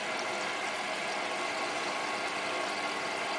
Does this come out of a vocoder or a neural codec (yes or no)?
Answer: no